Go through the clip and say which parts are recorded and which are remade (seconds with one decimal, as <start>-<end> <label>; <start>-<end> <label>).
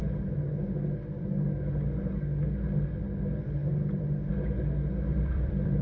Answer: 0.0-5.1 recorded; 5.1-5.8 remade